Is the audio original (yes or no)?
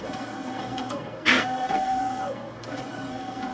no